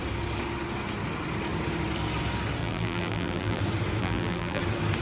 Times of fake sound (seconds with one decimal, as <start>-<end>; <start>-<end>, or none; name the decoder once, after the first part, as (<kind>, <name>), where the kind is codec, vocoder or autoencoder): 2.6-3.6 (vocoder, BigVGAN v2); 4.0-4.6